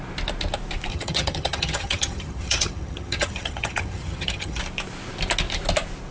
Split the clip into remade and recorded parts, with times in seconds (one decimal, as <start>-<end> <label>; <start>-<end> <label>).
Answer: 0.0-0.9 recorded; 0.9-4.6 remade; 4.6-6.1 recorded